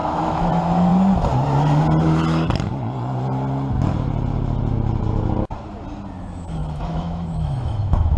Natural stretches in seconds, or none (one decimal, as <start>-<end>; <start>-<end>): 0.5-6.6